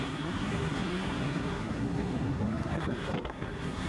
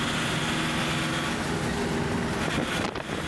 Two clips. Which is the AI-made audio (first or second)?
first